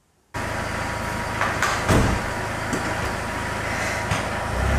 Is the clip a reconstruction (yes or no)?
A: no